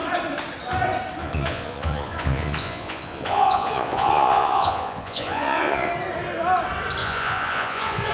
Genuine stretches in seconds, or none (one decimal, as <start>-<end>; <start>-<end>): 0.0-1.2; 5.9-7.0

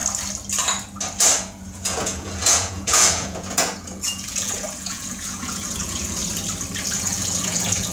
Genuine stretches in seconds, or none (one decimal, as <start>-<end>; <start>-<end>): 0.0-1.4; 6.2-6.8

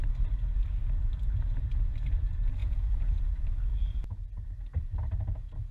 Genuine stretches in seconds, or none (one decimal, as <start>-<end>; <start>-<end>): 0.0-2.6; 3.2-5.7